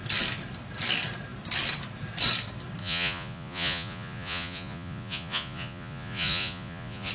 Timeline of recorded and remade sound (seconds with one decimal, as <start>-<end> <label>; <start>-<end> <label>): 0.0-2.8 recorded; 2.8-7.1 remade